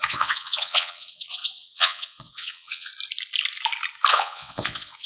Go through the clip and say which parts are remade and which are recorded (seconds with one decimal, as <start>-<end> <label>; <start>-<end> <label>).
0.0-2.9 remade; 2.9-4.1 recorded; 4.1-5.1 remade